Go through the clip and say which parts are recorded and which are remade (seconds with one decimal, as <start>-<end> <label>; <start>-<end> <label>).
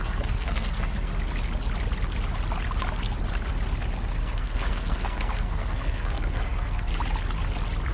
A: 0.0-1.1 remade; 1.1-4.1 recorded; 4.1-6.9 remade; 6.9-7.9 recorded